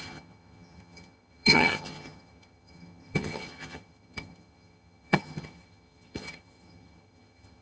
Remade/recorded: remade